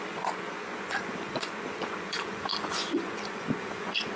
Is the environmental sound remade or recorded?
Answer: remade